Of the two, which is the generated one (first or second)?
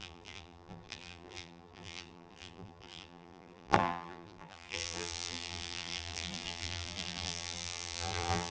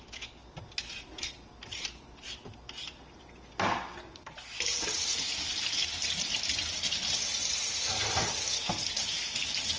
first